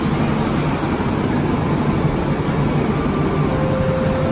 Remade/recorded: recorded